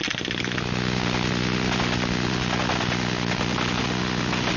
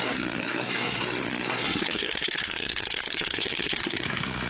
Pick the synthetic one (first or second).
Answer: second